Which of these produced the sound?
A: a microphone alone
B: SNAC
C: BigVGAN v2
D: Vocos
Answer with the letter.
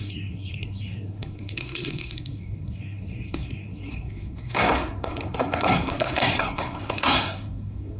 B